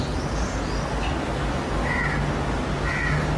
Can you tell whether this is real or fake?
real